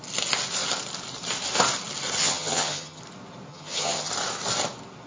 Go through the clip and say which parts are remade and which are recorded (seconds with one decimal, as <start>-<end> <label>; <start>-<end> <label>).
0.0-2.2 recorded; 2.2-3.0 remade; 3.0-3.5 recorded; 3.5-4.1 remade; 4.1-5.1 recorded